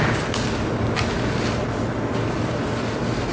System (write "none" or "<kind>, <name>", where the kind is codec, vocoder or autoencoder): none